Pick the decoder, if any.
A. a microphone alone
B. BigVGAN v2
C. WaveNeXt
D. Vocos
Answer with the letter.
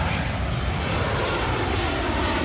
A